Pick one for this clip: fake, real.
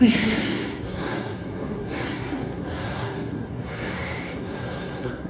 fake